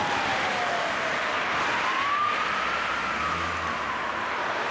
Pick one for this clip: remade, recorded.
recorded